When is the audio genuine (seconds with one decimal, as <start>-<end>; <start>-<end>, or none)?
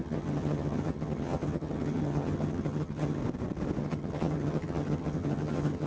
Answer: 3.2-3.8